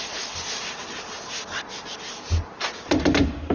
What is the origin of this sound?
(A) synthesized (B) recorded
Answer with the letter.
B